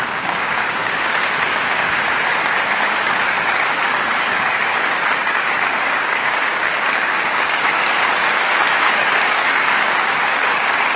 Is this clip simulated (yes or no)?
yes